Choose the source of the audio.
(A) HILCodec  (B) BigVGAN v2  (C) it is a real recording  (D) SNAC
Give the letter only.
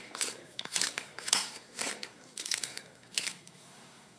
D